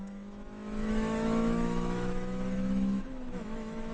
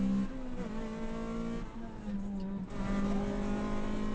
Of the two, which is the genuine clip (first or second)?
second